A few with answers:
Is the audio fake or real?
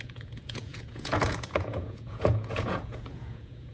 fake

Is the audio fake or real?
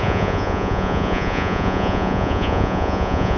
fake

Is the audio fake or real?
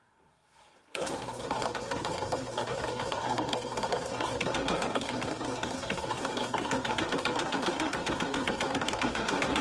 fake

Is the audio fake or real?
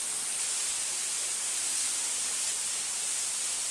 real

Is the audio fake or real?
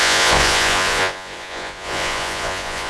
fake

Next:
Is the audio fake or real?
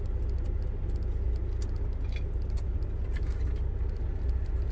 real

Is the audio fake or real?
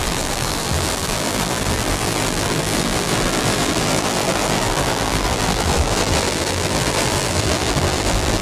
fake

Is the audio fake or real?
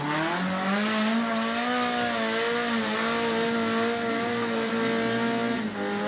real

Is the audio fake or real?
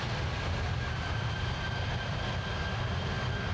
real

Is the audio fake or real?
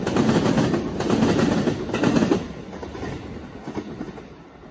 real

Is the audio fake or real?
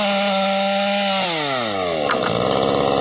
real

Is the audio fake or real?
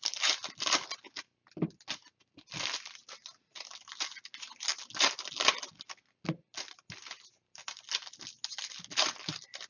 real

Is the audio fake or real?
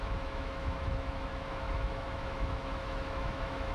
fake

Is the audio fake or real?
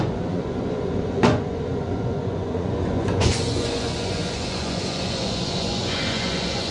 fake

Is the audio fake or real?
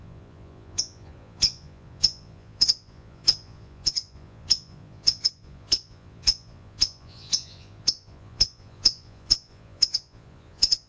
fake